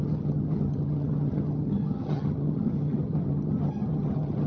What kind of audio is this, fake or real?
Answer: fake